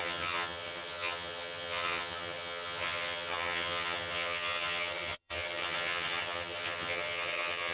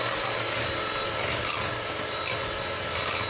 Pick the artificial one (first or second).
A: first